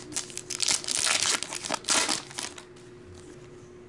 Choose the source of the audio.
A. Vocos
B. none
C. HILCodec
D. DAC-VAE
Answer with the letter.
B